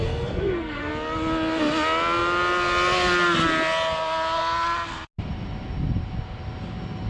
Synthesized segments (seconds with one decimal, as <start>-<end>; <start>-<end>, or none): 0.0-0.9